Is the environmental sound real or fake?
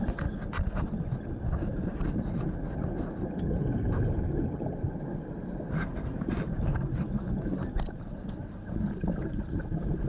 real